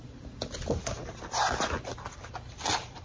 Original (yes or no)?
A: yes